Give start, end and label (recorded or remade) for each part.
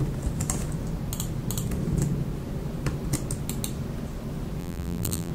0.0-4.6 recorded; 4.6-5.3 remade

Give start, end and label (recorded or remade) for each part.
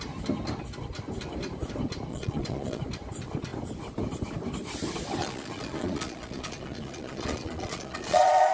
0.0-2.1 recorded; 2.1-2.8 remade; 2.8-5.2 recorded; 5.2-8.5 remade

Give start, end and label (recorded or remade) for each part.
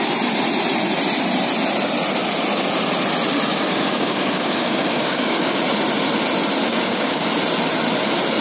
0.0-3.5 recorded; 3.5-5.6 remade; 5.6-6.7 recorded; 6.7-7.3 remade; 7.3-8.4 recorded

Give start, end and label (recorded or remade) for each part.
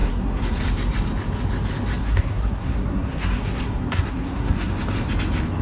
0.0-0.6 remade; 0.6-2.0 recorded; 2.0-4.7 remade; 4.7-5.6 recorded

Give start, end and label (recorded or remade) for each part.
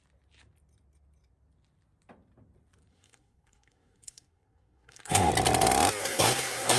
0.0-2.9 recorded; 2.9-5.3 remade; 5.3-6.0 recorded; 6.0-6.8 remade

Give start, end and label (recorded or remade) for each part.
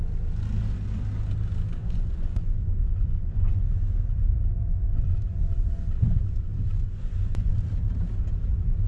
0.0-1.8 recorded; 1.8-3.8 remade; 3.8-4.7 recorded; 4.7-5.7 remade; 5.7-6.5 recorded; 6.5-7.5 remade; 7.5-8.9 recorded